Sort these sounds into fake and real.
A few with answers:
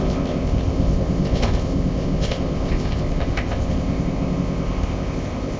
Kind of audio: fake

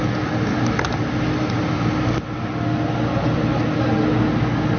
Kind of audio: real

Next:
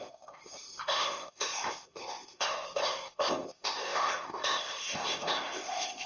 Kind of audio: fake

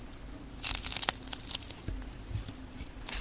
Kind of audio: real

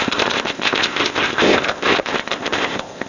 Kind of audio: fake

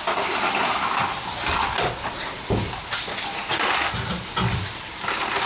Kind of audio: real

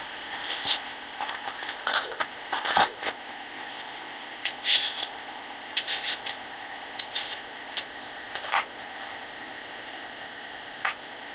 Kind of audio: fake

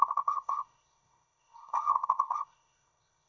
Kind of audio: fake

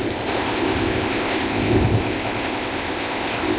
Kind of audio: fake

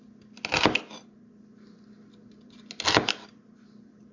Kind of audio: real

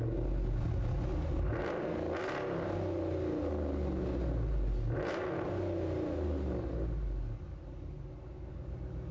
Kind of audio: real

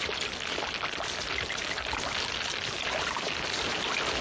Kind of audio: real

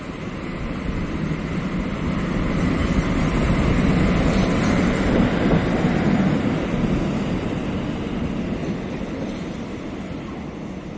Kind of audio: real